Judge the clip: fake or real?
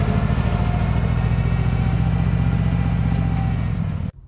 real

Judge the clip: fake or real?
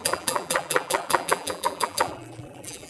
fake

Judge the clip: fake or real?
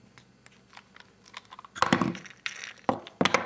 real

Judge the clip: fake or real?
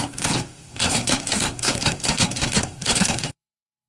fake